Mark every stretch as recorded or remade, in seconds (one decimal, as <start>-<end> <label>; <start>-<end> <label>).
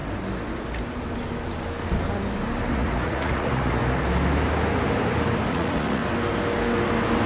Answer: 0.0-2.7 recorded; 2.7-3.8 remade; 3.8-5.5 recorded; 5.5-6.0 remade; 6.0-7.3 recorded